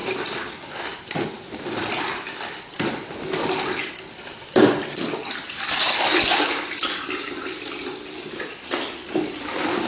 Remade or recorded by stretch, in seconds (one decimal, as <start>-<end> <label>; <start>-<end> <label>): 0.0-0.5 remade; 0.5-0.9 recorded; 0.9-3.1 remade; 3.1-3.8 recorded; 3.8-7.6 remade; 7.6-9.9 recorded